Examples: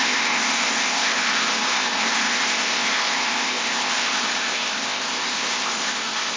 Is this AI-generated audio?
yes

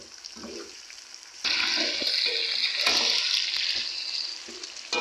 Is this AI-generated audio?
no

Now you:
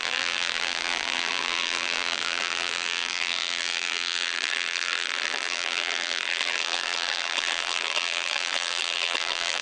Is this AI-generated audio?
yes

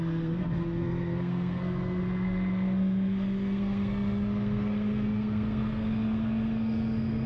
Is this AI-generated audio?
yes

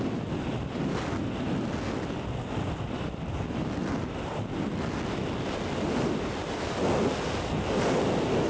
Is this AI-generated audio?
no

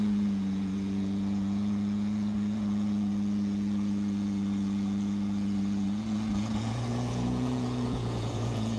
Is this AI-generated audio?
yes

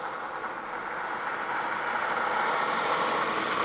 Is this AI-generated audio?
no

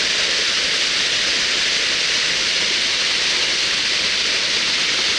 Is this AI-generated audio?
no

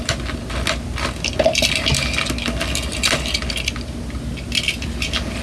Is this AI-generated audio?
no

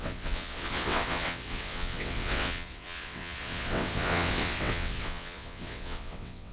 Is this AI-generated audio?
yes